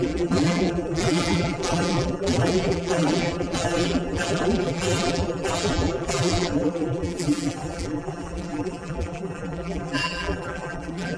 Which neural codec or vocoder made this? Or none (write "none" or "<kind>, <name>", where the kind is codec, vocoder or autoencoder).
vocoder, BigVGAN v2